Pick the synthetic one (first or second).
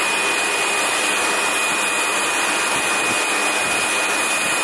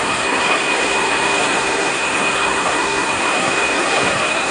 second